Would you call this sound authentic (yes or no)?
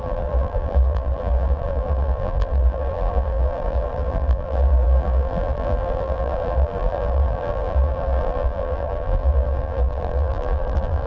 no